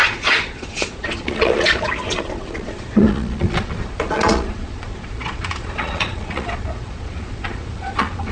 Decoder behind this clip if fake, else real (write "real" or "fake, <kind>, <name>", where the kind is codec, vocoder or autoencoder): fake, vocoder, Vocos